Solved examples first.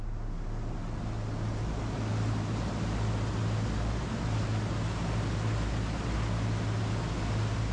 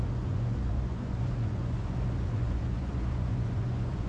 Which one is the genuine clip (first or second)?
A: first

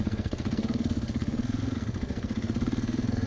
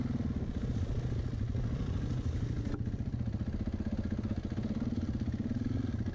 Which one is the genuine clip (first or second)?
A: second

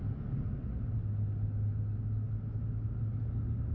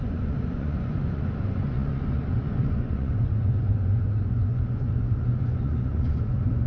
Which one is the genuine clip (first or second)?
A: first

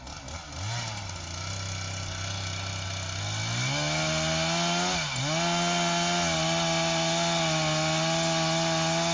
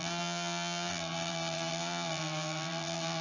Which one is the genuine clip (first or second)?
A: first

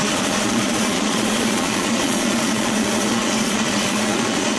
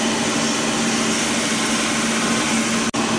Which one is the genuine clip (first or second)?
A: second